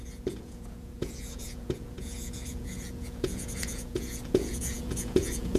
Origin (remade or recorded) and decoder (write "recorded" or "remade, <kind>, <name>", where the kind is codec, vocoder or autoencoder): remade, vocoder, Vocos